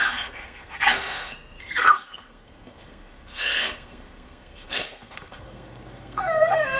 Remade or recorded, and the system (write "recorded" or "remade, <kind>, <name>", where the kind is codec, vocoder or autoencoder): remade, codec, SNAC